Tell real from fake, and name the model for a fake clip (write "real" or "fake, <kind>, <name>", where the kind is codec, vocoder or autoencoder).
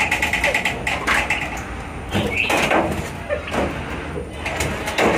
real